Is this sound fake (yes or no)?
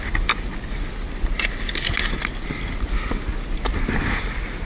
no